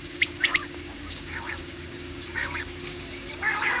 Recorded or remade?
remade